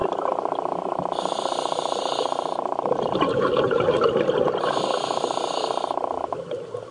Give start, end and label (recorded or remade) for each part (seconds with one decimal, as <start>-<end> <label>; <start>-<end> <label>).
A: 0.0-4.1 remade; 4.1-6.9 recorded